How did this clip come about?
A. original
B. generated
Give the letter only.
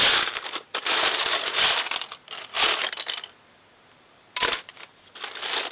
A